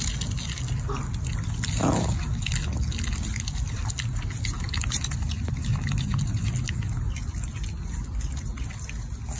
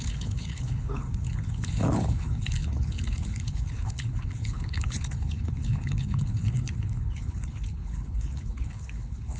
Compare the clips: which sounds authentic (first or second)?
first